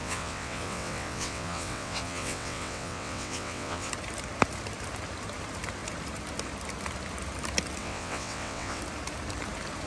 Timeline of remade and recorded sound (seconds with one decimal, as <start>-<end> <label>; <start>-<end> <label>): 0.0-3.9 remade; 3.9-7.8 recorded; 7.8-8.8 remade; 8.8-9.9 recorded

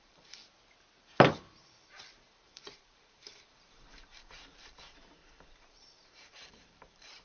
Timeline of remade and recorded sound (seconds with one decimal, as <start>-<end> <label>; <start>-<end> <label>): 0.0-0.4 remade; 0.4-1.6 recorded; 1.6-7.2 remade

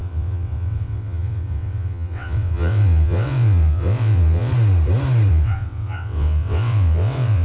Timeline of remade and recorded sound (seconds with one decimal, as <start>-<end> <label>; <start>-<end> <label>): 0.0-4.5 remade; 4.5-5.3 recorded; 5.3-7.4 remade

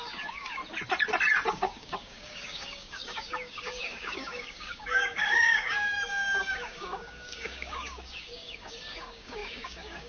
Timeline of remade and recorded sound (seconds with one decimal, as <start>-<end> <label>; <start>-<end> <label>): 0.0-0.6 remade; 0.6-1.5 recorded; 1.5-10.1 remade

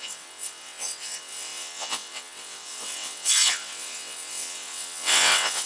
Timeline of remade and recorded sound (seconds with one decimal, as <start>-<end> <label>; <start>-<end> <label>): 0.0-5.7 remade